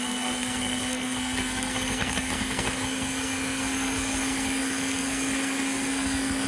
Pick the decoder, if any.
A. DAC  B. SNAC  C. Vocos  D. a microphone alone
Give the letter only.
B